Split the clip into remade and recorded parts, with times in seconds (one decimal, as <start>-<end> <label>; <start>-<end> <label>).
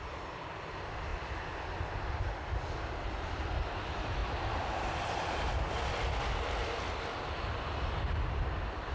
0.0-4.2 recorded; 4.2-5.5 remade; 5.5-8.9 recorded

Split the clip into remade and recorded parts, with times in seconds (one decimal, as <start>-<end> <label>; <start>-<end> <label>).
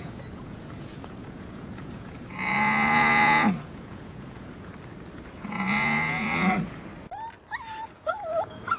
0.0-4.7 remade; 4.7-5.4 recorded; 5.4-6.9 remade; 6.9-7.8 recorded; 7.8-8.8 remade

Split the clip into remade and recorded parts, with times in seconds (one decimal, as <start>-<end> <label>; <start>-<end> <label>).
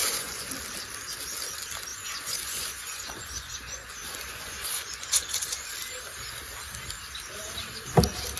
0.0-0.5 remade; 0.5-1.9 recorded; 1.9-5.7 remade; 5.7-8.4 recorded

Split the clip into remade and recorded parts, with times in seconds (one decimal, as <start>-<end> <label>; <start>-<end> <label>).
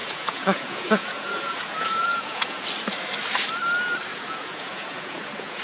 0.0-2.6 remade; 2.6-4.1 recorded; 4.1-5.6 remade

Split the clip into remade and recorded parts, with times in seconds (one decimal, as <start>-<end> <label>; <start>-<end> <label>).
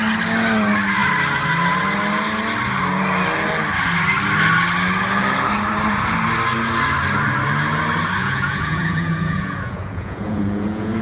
0.0-8.2 recorded; 8.2-11.0 remade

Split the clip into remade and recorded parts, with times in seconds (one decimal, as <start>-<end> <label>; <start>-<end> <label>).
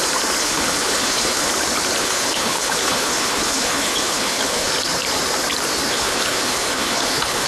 0.0-0.4 recorded; 0.4-1.5 remade; 1.5-2.0 recorded; 2.0-4.7 remade; 4.7-5.9 recorded; 5.9-7.5 remade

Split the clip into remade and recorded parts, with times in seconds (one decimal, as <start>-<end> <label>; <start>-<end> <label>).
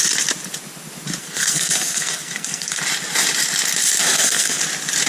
0.0-1.2 recorded; 1.2-2.8 remade; 2.8-4.0 recorded; 4.0-4.6 remade; 4.6-5.1 recorded